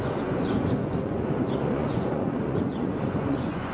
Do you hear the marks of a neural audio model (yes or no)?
yes